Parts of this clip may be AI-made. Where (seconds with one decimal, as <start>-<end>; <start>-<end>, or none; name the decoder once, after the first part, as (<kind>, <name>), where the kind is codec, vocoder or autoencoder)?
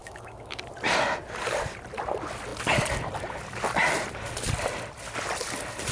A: 0.0-0.6 (autoencoder, DAC-VAE)